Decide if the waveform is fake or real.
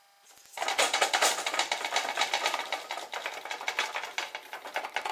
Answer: real